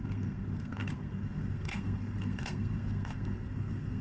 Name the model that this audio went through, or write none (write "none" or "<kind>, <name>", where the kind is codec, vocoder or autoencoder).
codec, SNAC